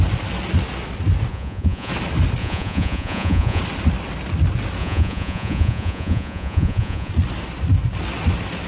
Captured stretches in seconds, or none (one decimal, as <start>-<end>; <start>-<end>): 0.0-1.3; 1.9-2.4; 3.6-4.8; 7.1-8.7

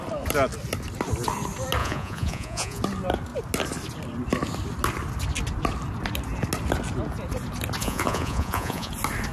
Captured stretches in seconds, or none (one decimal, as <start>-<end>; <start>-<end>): 0.0-1.8; 2.8-7.8; 8.9-9.3